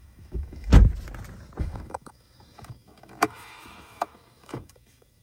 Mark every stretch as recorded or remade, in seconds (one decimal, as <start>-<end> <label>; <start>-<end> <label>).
0.0-0.7 remade; 0.7-1.6 recorded; 1.6-5.2 remade